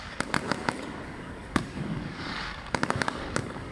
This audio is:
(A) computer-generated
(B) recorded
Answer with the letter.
A